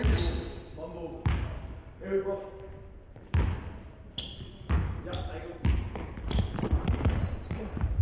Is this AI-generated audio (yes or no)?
no